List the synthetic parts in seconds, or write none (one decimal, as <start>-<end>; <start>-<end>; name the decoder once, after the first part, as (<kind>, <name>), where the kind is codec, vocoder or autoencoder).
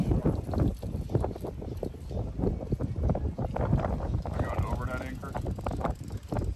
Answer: 5.2-6.6 (vocoder, BigVGAN v2)